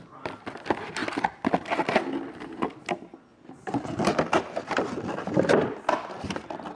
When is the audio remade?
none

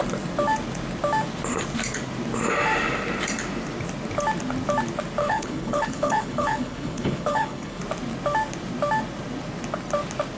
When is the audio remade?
5.2-7.8 (codec, HILCodec)

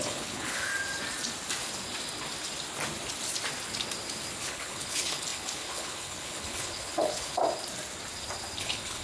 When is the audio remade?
0.0-0.7 (codec, HILCodec); 4.4-7.4; 8.6-9.0

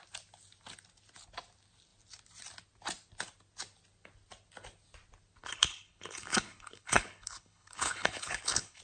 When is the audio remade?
5.4-8.8 (codec, HILCodec)

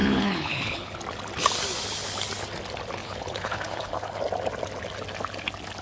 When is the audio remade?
0.0-1.0 (codec, HILCodec); 3.0-4.2

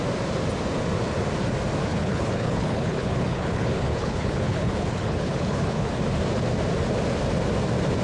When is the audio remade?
1.9-5.9 (codec, HILCodec)